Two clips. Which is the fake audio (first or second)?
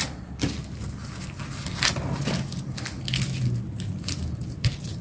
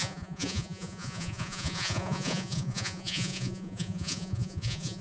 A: second